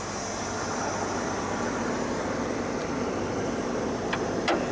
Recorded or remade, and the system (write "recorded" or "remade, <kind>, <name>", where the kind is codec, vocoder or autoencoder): recorded